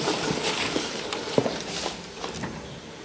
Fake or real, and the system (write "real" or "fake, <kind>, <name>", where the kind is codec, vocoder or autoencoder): real